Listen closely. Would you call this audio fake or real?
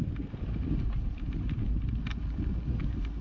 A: real